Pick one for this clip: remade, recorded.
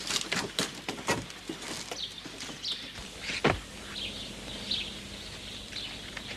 recorded